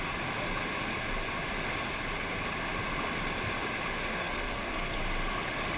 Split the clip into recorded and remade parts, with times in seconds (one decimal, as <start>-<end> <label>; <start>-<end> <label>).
0.0-4.1 recorded; 4.1-4.9 remade; 4.9-5.8 recorded